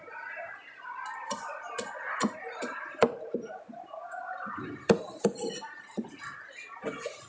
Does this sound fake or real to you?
real